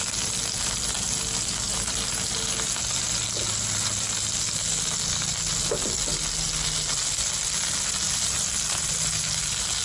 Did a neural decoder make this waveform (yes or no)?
no